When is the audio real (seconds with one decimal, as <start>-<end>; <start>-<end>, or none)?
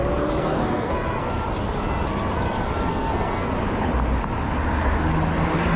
0.0-0.4; 1.3-2.9; 3.5-5.8